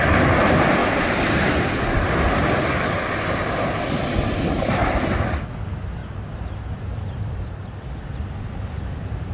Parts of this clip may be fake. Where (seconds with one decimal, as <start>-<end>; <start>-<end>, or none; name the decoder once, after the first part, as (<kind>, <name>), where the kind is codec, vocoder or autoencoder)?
none